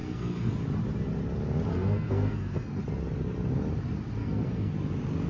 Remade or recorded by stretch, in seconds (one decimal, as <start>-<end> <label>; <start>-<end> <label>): 0.0-0.5 remade; 0.5-1.7 recorded; 1.7-2.8 remade; 2.8-4.2 recorded; 4.2-4.7 remade; 4.7-5.3 recorded